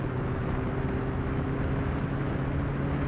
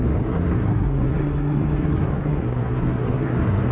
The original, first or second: first